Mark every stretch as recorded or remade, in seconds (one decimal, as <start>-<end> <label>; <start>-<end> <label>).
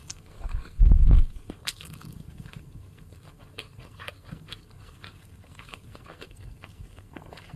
0.0-7.6 remade